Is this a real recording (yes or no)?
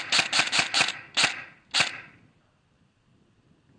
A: yes